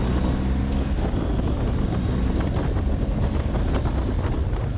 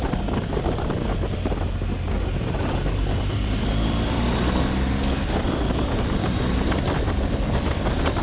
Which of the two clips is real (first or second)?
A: first